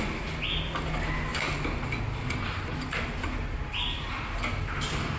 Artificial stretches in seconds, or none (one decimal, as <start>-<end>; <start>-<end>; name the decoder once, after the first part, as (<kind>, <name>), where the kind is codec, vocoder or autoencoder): none